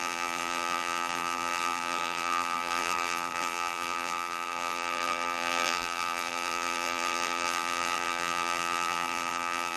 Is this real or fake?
fake